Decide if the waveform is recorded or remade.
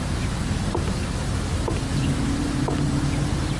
remade